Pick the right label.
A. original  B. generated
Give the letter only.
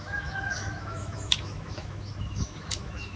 B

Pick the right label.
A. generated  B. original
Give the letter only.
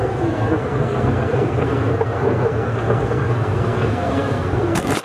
A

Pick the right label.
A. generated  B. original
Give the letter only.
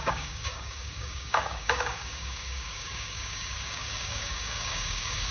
A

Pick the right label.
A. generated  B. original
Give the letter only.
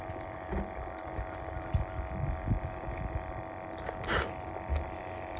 B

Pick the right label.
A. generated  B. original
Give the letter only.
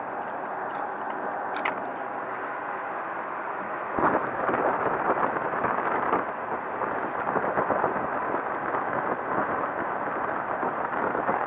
B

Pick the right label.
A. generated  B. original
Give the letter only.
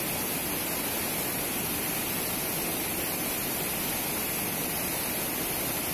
B